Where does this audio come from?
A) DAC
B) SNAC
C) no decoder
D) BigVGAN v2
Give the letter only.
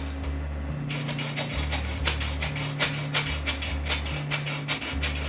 C